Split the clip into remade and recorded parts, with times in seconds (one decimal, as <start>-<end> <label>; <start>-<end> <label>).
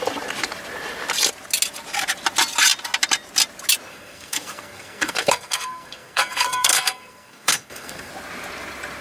0.0-3.9 recorded; 3.9-8.1 remade; 8.1-9.0 recorded